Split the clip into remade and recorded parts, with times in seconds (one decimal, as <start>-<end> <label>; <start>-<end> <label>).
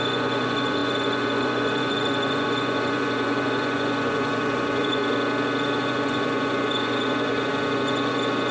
0.0-5.0 remade; 5.0-5.8 recorded; 5.8-8.5 remade